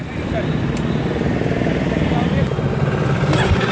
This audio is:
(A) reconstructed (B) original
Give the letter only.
A